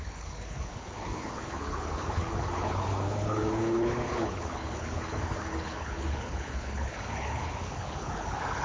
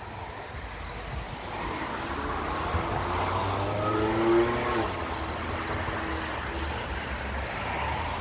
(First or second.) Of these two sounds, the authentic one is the second